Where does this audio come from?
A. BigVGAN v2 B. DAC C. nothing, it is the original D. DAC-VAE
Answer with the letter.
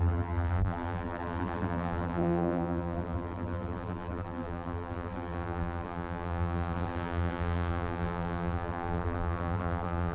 A